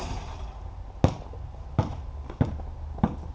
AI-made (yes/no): no